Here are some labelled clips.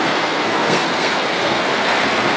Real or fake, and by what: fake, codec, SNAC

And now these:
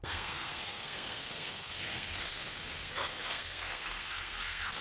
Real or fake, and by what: fake, codec, SNAC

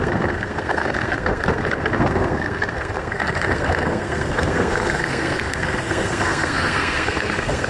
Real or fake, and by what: fake, codec, SNAC